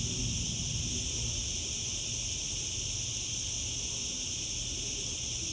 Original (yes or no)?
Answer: yes